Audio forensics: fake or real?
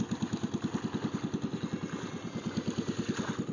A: real